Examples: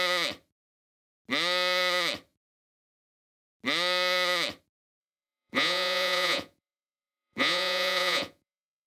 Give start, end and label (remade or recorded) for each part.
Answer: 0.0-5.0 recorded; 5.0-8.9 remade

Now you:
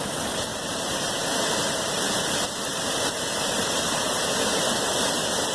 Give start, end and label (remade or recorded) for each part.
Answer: 0.0-5.5 recorded